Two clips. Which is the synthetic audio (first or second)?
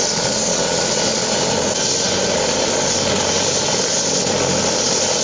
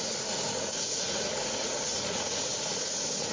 second